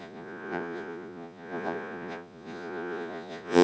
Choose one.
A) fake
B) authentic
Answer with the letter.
A